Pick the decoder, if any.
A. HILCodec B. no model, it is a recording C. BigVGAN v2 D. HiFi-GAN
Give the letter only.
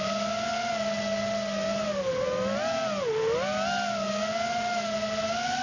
B